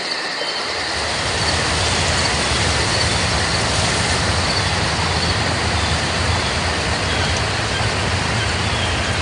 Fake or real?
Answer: real